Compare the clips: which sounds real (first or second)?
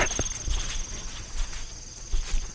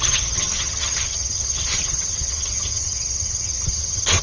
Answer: first